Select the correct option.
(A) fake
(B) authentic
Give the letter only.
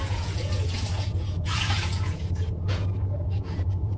A